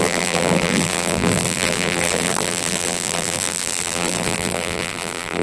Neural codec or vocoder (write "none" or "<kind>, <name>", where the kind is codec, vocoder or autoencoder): vocoder, BigVGAN v2